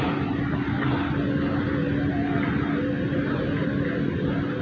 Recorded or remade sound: recorded